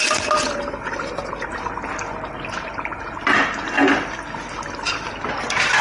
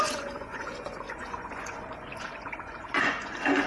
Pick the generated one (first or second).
second